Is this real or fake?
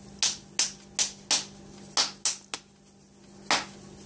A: real